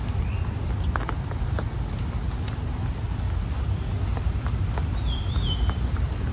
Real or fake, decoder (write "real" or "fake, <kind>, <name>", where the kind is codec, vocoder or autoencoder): real